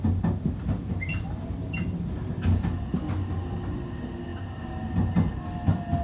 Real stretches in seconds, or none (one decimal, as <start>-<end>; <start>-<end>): 0.0-6.0